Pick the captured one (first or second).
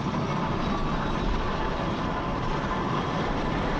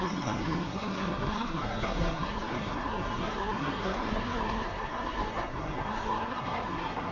first